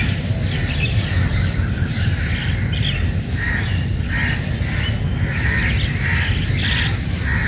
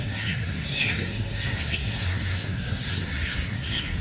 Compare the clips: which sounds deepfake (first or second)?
second